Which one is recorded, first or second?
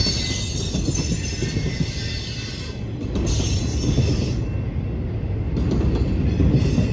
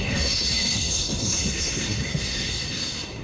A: first